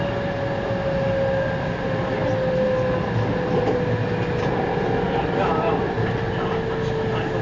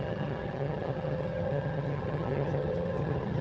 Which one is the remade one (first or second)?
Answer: second